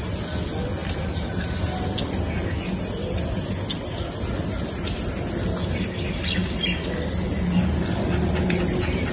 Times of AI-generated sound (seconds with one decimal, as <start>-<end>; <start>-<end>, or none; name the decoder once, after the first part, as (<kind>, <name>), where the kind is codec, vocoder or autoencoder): none